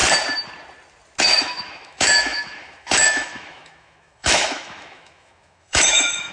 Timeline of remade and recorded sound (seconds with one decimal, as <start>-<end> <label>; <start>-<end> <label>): 0.0-1.2 recorded; 1.2-6.3 remade